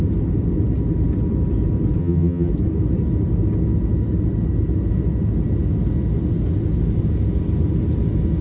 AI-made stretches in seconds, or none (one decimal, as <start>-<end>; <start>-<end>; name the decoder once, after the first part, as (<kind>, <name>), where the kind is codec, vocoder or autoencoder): 2.0-2.5 (vocoder, HiFi-GAN)